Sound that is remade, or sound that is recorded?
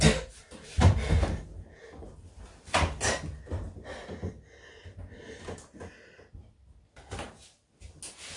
recorded